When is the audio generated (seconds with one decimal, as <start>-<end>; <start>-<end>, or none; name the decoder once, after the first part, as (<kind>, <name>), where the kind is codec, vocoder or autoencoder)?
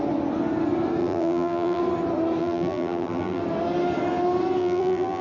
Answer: 1.0-1.8 (vocoder, BigVGAN v2); 2.4-3.4; 4.6-5.2